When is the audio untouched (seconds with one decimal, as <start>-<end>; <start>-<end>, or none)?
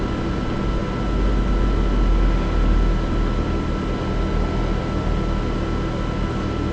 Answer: 0.0-6.7